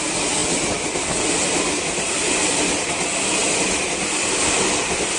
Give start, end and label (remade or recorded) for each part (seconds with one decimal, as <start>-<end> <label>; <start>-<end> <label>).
0.0-5.2 recorded